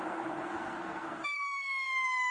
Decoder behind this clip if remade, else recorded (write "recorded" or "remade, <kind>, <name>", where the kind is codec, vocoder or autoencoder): remade, codec, SNAC